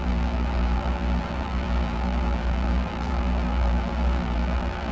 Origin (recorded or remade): remade